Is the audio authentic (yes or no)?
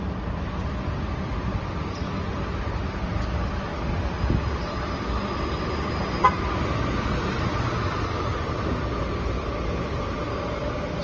yes